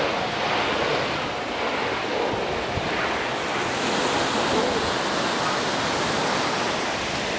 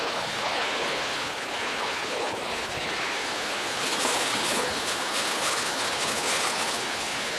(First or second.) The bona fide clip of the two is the first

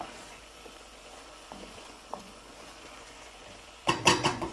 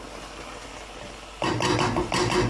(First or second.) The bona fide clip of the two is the second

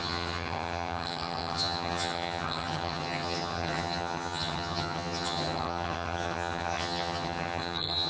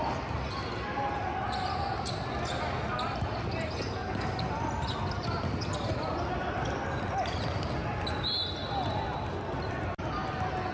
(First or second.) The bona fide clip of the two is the second